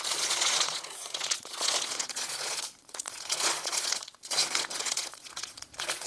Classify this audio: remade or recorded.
remade